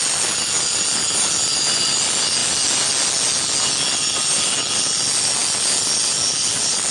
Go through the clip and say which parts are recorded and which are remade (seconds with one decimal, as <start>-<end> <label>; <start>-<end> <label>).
0.0-6.9 recorded